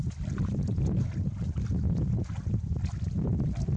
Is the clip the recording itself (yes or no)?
yes